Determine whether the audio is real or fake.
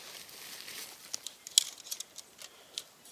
real